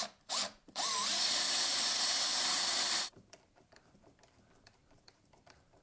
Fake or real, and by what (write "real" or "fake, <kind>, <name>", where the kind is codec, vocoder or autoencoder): fake, vocoder, BigVGAN v2